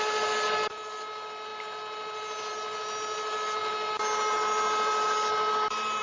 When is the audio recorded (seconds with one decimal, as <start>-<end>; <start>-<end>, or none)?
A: 0.0-6.0